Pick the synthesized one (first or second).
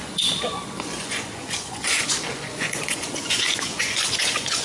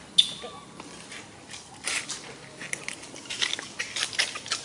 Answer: first